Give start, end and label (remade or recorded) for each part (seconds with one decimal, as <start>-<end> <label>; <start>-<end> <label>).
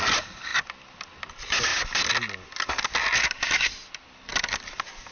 0.0-5.1 recorded